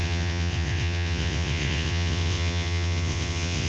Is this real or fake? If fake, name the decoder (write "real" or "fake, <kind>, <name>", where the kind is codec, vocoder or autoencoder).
fake, vocoder, WaveNeXt